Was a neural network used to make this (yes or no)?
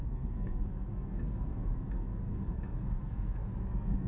yes